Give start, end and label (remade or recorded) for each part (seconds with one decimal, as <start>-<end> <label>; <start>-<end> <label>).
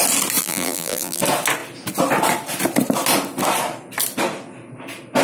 0.0-0.4 recorded; 0.4-1.2 remade; 1.2-5.2 recorded